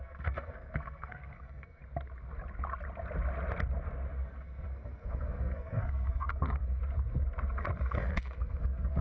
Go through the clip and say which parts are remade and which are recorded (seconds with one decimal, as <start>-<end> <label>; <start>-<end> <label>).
0.0-1.8 remade; 1.8-4.1 recorded; 4.1-6.8 remade; 6.8-7.9 recorded; 7.9-9.0 remade